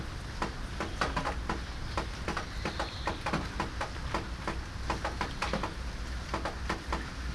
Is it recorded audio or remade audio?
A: recorded